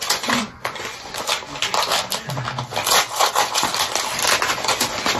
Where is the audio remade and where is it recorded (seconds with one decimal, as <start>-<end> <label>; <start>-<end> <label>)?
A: 0.0-1.3 remade; 1.3-2.9 recorded; 2.9-3.7 remade; 3.7-4.5 recorded; 4.5-5.2 remade